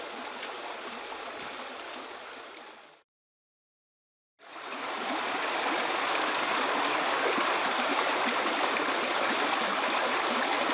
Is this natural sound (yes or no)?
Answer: yes